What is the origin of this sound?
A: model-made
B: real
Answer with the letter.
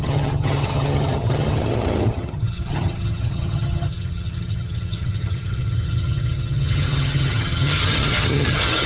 A